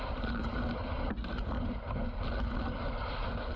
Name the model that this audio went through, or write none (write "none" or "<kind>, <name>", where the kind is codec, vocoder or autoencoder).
none